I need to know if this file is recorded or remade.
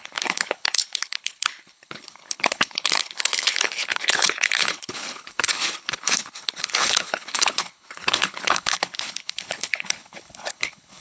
remade